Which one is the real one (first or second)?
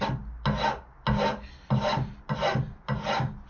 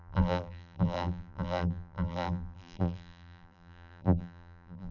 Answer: first